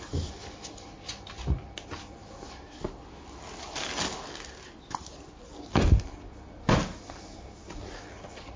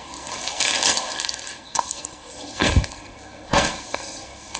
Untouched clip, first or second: first